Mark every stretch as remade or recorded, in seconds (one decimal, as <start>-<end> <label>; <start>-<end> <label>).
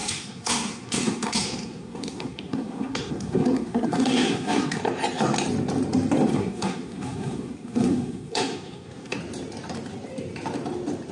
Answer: 0.0-4.8 remade; 4.8-6.3 recorded; 6.3-9.2 remade; 9.2-11.1 recorded